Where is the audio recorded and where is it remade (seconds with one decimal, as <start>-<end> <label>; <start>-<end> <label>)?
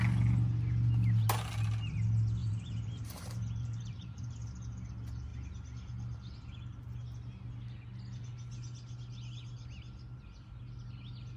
0.0-2.4 recorded; 2.4-4.3 remade; 4.3-11.4 recorded